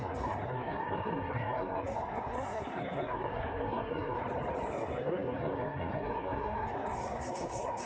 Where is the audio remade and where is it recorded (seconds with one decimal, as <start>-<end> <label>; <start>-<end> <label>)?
0.0-4.2 remade; 4.2-4.7 recorded; 4.7-7.9 remade